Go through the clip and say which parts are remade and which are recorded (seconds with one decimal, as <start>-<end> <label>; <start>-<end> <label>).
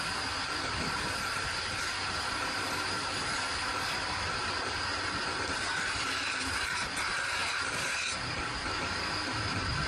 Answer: 0.0-9.9 recorded